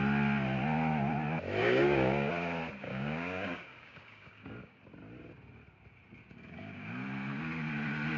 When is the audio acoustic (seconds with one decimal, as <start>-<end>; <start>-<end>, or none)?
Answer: 0.0-1.6; 2.3-2.8; 4.8-6.2; 6.9-8.2